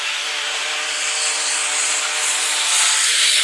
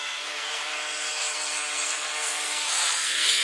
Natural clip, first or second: first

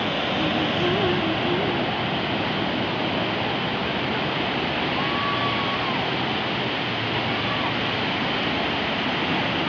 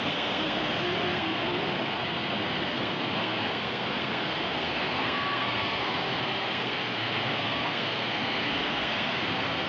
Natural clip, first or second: first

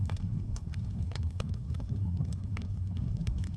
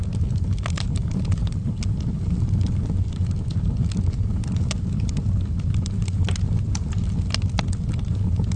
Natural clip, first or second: second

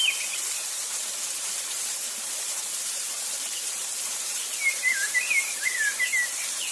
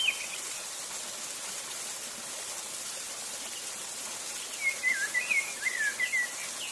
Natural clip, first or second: second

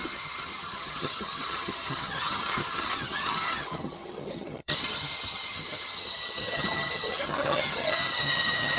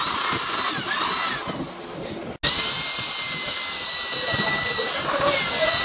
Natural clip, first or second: second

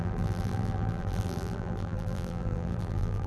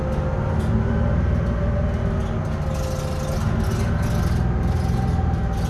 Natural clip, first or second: second